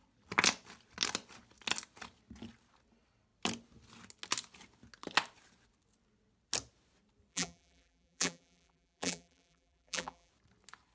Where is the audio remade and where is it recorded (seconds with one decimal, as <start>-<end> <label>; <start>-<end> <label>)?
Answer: 0.0-7.3 recorded; 7.3-10.3 remade; 10.3-10.9 recorded

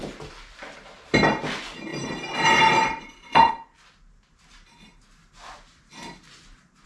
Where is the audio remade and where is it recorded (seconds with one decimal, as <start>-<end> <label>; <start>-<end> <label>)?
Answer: 0.0-1.9 recorded; 1.9-3.5 remade; 3.5-6.9 recorded

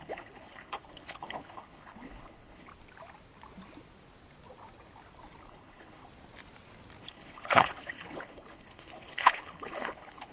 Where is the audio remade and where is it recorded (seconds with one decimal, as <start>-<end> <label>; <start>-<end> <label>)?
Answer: 0.0-2.7 remade; 2.7-5.5 recorded; 5.5-6.0 remade; 6.0-7.0 recorded; 7.0-10.3 remade

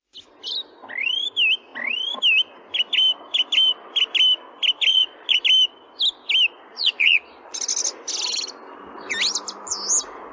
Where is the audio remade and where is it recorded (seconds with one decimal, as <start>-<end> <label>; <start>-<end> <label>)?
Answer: 0.0-4.9 recorded; 4.9-5.4 remade; 5.4-6.7 recorded; 6.7-7.6 remade; 7.6-10.3 recorded

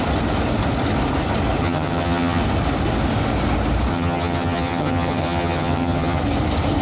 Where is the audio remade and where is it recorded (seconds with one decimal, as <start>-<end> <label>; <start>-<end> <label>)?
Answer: 0.0-1.6 recorded; 1.6-2.4 remade; 2.4-3.9 recorded; 3.9-6.2 remade; 6.2-6.8 recorded